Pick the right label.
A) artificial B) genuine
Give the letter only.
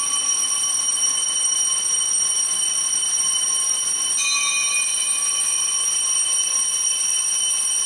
B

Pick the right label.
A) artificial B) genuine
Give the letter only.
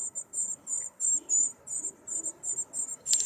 B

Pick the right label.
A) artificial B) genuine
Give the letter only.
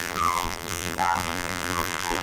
A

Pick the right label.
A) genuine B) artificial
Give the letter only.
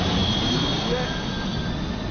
A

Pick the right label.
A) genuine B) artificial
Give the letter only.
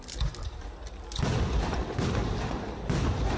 A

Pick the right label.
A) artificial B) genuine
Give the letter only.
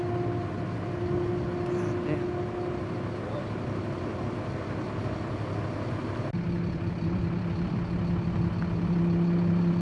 B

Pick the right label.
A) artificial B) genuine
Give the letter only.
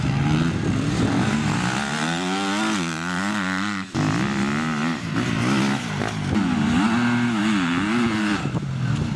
B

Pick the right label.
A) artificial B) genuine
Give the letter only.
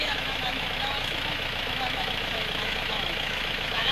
A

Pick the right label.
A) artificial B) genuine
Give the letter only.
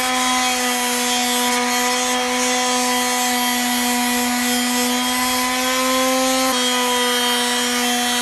B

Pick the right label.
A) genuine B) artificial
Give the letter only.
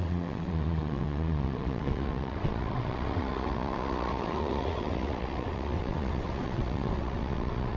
B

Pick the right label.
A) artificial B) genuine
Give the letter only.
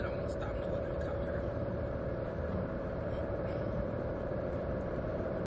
A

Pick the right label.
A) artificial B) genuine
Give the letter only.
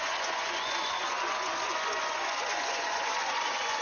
A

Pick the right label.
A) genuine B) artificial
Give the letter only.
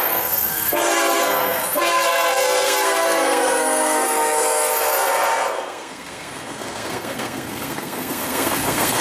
B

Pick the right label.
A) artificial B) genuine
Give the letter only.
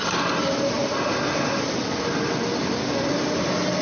B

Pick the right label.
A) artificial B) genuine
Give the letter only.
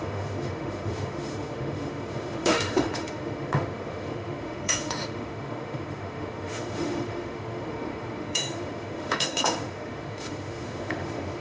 A